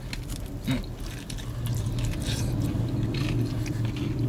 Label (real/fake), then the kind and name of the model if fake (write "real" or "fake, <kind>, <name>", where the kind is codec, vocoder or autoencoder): real